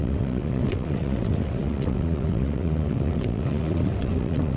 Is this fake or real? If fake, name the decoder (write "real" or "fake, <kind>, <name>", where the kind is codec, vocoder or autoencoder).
fake, vocoder, WaveNeXt